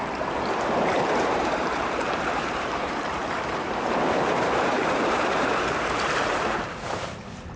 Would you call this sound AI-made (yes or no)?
yes